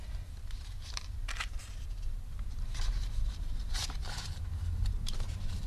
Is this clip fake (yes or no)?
yes